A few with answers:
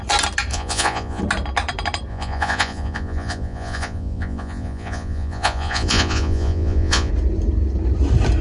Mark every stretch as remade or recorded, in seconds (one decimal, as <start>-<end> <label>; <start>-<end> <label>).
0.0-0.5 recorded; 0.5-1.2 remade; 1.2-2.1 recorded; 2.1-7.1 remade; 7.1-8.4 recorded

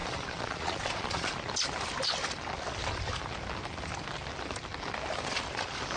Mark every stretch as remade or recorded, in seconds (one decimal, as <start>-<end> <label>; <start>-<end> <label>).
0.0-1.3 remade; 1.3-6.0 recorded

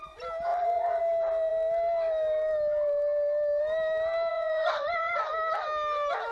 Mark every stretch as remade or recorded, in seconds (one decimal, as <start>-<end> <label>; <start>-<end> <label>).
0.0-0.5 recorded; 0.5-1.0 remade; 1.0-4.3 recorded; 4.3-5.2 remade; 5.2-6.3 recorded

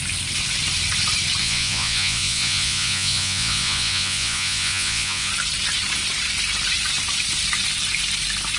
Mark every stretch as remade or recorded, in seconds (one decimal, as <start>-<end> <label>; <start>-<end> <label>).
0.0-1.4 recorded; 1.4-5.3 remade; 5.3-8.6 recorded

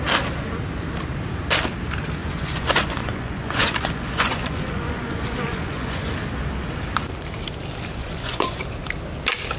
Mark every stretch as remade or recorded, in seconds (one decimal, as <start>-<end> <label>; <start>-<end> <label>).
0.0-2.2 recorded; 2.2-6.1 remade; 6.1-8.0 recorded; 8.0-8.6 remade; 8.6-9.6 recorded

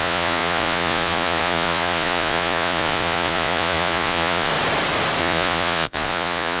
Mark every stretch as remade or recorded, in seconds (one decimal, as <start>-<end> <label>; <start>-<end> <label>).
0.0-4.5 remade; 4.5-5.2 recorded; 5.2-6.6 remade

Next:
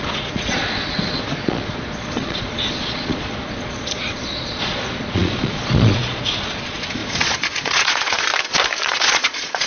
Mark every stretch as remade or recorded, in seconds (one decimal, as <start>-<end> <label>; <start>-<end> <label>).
0.0-8.3 remade; 8.3-8.9 recorded; 8.9-9.7 remade